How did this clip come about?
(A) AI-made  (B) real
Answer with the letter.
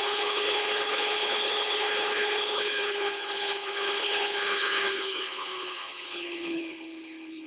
A